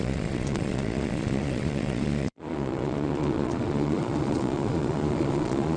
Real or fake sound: fake